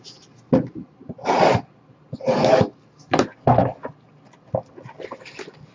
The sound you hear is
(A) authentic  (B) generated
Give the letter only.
A